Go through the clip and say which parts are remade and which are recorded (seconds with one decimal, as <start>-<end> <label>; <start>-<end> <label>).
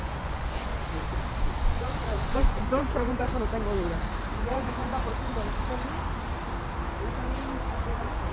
0.0-0.7 remade; 0.7-1.4 recorded; 1.4-3.3 remade; 3.3-4.5 recorded; 4.5-4.9 remade; 4.9-7.7 recorded; 7.7-8.3 remade